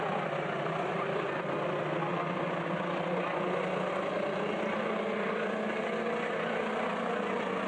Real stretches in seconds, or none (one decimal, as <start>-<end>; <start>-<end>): 0.0-7.7